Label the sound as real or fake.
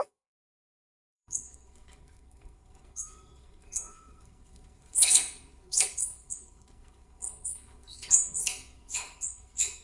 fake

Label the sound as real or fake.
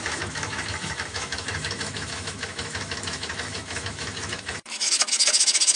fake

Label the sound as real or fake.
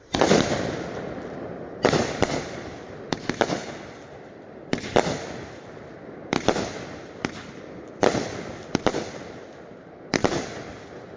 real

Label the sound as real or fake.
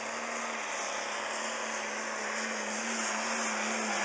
real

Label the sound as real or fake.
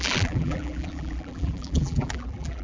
fake